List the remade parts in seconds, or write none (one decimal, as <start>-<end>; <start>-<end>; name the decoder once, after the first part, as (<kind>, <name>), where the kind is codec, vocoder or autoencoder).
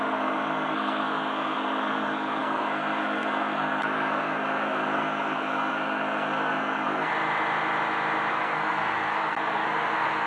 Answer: 0.0-7.1 (codec, SNAC); 8.3-10.3